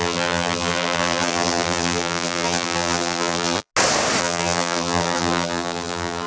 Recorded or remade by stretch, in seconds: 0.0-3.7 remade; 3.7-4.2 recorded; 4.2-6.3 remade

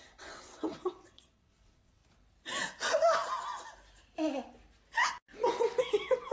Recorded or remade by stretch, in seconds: 0.0-2.0 remade; 2.0-5.8 recorded; 5.8-6.3 remade

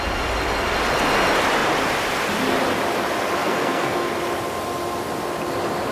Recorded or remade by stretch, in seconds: 0.0-3.4 recorded; 3.4-4.2 remade; 4.2-5.9 recorded

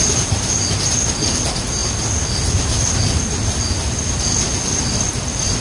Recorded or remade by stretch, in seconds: 0.0-5.6 recorded

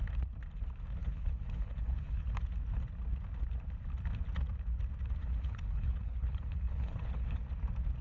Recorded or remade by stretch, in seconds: 0.0-1.0 recorded; 1.0-2.3 remade; 2.3-5.2 recorded; 5.2-7.4 remade; 7.4-8.0 recorded